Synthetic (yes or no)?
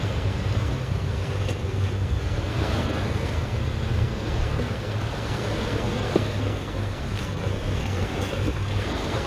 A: yes